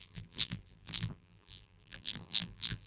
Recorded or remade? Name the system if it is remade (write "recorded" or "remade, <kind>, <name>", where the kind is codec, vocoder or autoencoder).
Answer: remade, vocoder, BigVGAN v2